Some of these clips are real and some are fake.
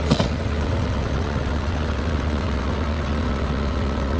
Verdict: fake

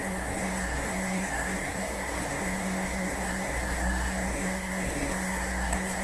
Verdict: fake